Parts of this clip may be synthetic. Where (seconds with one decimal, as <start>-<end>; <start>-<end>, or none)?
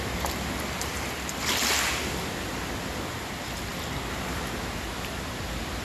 none